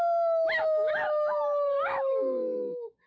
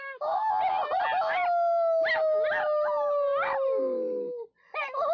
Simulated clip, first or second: first